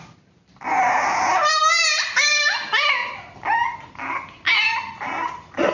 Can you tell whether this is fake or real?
real